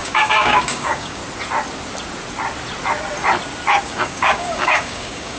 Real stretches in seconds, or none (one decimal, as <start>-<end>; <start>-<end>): 1.2-3.8

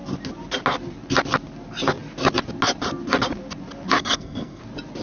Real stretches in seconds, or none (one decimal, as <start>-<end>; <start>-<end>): 0.0-4.0; 4.6-5.0

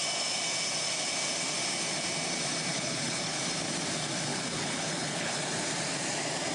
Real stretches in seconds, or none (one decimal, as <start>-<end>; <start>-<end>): 0.0-2.7; 3.4-4.3; 5.4-6.5

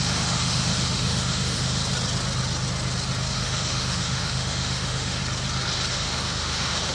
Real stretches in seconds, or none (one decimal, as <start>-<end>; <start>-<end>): 1.8-3.3; 5.2-5.9

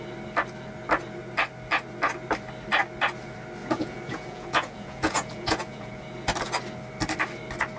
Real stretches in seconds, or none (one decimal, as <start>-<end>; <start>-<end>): 0.0-3.6; 6.0-7.8

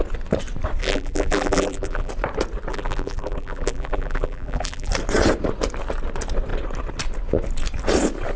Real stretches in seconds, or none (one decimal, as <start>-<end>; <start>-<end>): 0.0-0.8; 2.1-2.7; 4.9-8.4

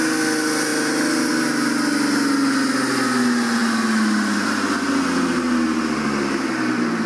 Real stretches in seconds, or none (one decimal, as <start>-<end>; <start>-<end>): 0.0-7.1

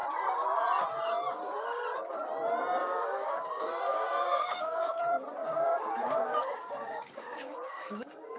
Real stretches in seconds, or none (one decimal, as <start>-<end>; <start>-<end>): 0.0-2.8; 5.0-5.4